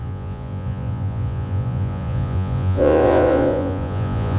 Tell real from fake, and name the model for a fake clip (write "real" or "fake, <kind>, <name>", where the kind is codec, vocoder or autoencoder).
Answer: fake, vocoder, Vocos